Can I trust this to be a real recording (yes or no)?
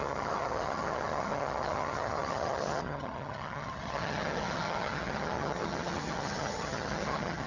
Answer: no